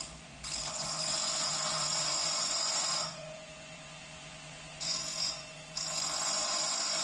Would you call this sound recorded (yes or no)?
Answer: no